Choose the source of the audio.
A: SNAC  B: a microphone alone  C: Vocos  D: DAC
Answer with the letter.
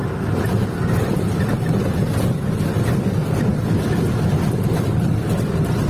B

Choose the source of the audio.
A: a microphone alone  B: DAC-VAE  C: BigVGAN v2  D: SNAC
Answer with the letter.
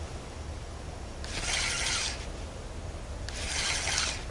A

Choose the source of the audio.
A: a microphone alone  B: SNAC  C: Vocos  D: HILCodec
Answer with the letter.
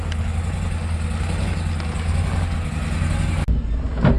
A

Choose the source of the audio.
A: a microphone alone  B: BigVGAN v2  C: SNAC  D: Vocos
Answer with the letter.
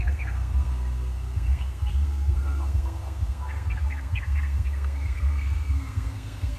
C